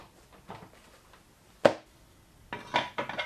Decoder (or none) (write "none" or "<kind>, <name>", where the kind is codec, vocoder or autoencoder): none